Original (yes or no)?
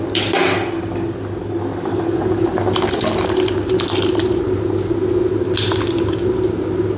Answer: yes